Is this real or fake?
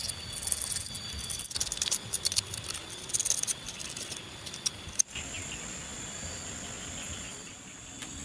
real